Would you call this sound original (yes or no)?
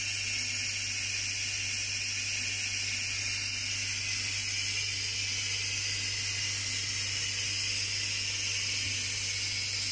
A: yes